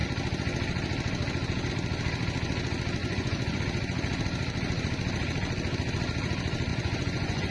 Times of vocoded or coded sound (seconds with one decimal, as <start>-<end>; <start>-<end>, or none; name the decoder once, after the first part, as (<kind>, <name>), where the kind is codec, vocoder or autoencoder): 3.0-3.6 (vocoder, Vocos); 6.7-7.5